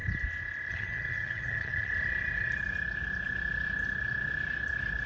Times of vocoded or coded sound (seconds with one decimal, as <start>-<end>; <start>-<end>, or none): 0.7-1.9